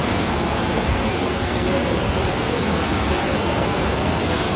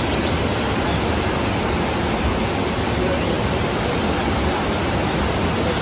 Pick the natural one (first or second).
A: second